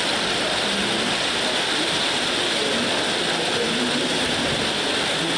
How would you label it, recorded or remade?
recorded